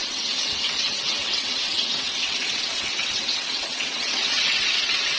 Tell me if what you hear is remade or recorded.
remade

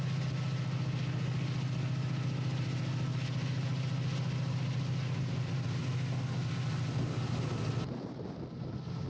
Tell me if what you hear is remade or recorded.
recorded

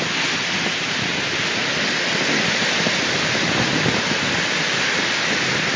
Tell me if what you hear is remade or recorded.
recorded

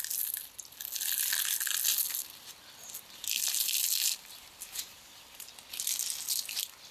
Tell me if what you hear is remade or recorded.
recorded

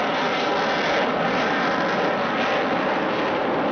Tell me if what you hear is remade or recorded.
recorded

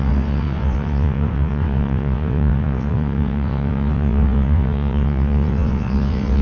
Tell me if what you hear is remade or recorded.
remade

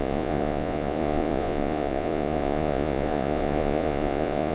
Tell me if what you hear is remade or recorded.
remade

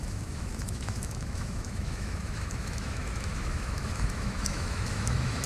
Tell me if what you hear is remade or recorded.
remade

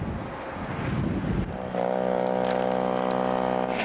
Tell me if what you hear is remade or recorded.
recorded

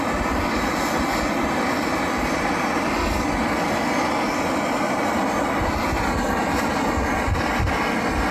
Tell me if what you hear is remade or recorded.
recorded